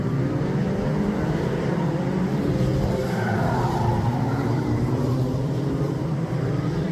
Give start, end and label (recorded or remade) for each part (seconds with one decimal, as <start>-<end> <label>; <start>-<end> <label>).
0.0-6.9 remade